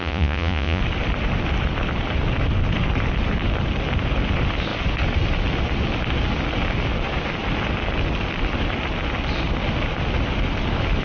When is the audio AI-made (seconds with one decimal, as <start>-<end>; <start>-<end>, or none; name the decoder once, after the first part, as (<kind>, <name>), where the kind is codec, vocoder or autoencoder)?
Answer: 0.0-0.8 (vocoder, Vocos)